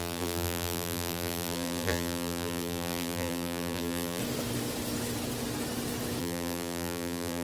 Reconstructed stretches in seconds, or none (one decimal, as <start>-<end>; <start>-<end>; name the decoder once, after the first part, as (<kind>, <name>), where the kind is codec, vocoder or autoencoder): 0.0-4.2 (vocoder, BigVGAN v2); 6.2-7.4